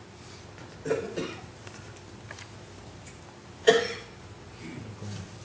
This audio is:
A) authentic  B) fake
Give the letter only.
A